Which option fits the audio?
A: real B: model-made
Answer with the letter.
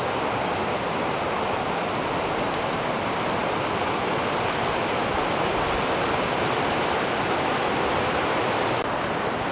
A